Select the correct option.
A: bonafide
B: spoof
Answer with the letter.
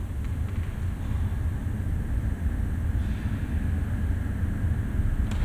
A